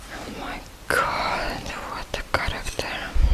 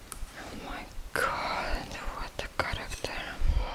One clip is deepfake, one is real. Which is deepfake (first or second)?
second